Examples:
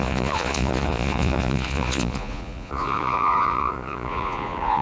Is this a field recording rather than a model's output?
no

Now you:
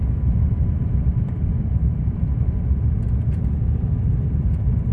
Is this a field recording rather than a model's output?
yes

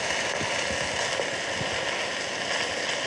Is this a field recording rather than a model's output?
yes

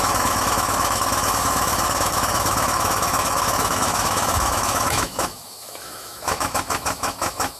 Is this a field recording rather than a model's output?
no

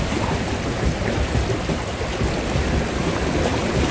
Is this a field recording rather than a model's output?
yes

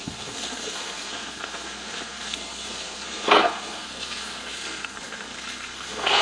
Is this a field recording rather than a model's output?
no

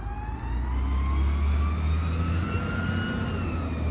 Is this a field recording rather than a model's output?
yes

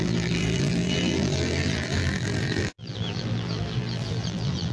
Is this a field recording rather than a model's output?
no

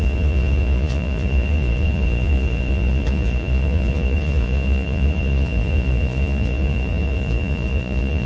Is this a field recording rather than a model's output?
no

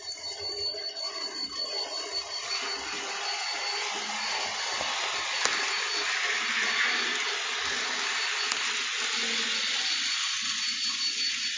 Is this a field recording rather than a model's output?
yes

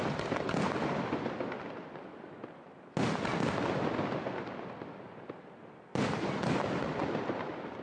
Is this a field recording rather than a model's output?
yes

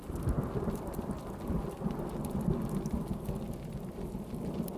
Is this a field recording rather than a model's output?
yes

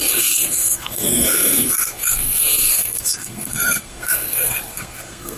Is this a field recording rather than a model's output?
no